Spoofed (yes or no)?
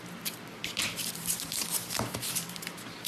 yes